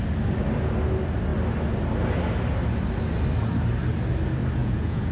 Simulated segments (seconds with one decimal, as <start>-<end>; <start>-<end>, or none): 4.6-5.1